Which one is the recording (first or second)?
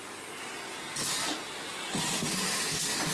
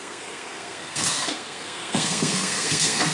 first